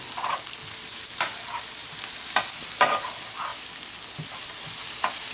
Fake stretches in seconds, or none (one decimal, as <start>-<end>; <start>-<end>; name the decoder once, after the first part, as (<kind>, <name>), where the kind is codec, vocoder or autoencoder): none